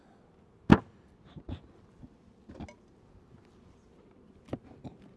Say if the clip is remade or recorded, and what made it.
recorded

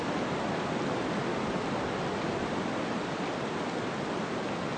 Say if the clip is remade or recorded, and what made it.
recorded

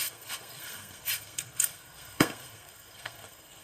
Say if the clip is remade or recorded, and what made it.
remade, codec, SNAC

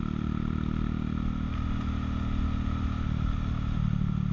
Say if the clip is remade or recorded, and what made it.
recorded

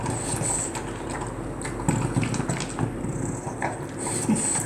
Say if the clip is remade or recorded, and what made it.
recorded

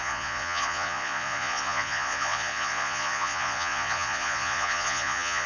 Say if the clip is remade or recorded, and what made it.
remade, vocoder, Vocos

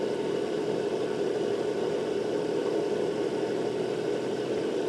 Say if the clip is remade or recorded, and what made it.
recorded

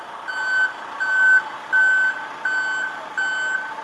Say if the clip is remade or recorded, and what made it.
recorded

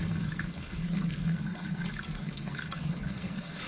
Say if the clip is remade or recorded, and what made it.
remade, codec, SNAC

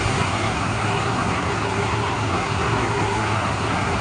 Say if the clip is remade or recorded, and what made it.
remade, codec, SNAC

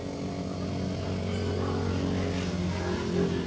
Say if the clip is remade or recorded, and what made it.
recorded